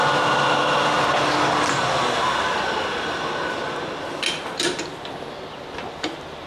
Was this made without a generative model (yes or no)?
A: yes